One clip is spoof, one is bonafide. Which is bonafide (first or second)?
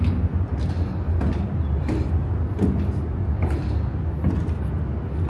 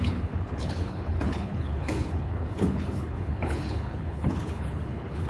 first